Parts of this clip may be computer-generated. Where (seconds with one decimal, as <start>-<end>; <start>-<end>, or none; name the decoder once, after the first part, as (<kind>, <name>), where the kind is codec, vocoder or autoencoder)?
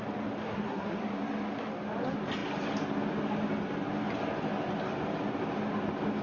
0.4-1.0 (codec, SNAC)